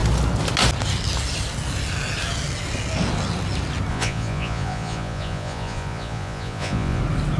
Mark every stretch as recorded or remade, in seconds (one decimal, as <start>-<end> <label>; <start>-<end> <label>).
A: 0.0-3.9 recorded; 3.9-7.0 remade; 7.0-7.4 recorded